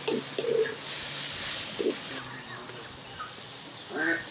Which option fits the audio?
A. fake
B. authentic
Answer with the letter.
B